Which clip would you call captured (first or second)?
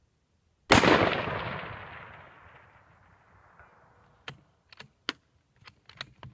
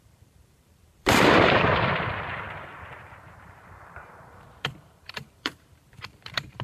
first